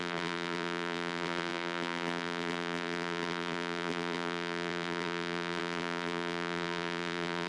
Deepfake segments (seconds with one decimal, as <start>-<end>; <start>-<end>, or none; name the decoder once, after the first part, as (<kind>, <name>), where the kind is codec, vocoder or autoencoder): 0.0-7.5 (vocoder, BigVGAN v2)